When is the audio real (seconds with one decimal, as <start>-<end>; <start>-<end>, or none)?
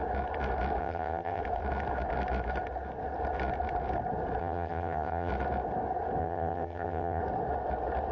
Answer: 0.0-0.8; 1.4-4.4; 5.3-6.2; 7.2-8.1